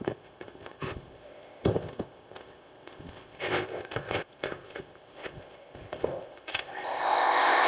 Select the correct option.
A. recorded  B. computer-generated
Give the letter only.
B